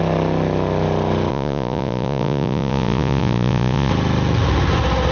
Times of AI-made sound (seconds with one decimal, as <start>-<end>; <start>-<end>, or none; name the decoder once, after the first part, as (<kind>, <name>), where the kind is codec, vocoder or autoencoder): 1.3-3.9 (vocoder, Vocos)